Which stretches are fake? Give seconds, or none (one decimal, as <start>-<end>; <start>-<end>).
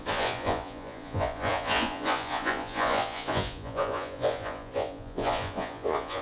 0.0-6.2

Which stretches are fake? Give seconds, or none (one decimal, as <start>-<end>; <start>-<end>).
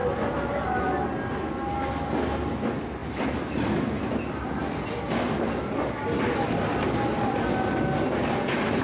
none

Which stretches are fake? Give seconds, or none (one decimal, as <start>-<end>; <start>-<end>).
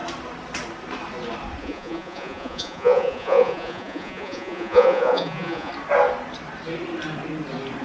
1.6-5.7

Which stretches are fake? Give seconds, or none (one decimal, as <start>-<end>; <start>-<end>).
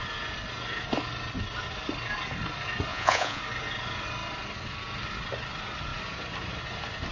2.9-3.4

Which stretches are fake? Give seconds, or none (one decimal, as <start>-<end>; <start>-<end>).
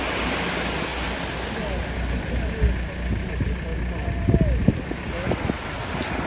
none